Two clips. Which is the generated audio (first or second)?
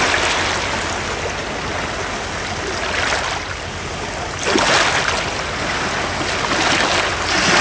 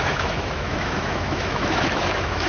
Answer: second